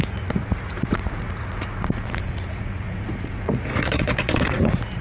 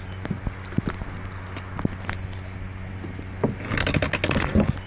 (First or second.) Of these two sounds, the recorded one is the second